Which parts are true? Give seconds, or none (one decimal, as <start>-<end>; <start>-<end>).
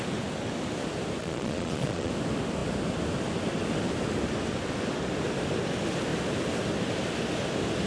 0.0-1.2; 2.1-7.9